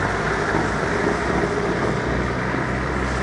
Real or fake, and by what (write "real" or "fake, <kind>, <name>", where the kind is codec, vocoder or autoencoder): real